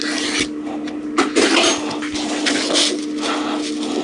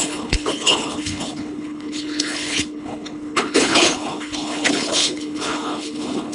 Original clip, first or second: first